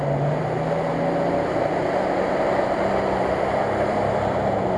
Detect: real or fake real